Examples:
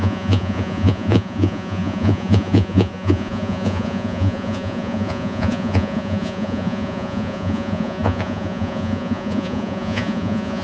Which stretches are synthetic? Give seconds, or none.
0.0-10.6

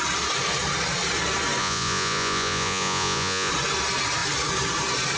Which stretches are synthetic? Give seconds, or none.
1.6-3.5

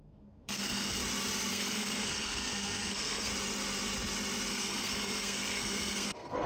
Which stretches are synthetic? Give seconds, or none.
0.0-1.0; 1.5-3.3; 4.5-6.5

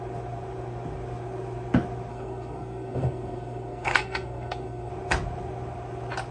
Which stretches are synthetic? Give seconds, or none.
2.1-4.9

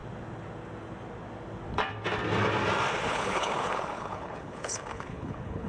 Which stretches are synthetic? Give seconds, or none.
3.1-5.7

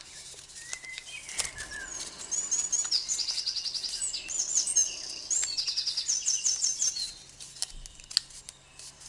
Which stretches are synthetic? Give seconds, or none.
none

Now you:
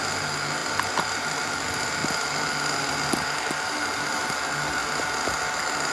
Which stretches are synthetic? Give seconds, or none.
none